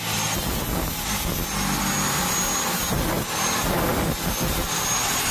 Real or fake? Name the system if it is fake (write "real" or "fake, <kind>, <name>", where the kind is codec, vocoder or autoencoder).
real